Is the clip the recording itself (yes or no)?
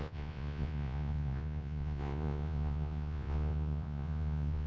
no